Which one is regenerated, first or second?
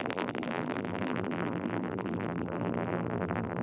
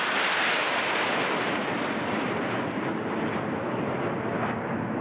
first